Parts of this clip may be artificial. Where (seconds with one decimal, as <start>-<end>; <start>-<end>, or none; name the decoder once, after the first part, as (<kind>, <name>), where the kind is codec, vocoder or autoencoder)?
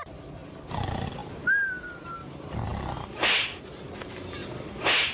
none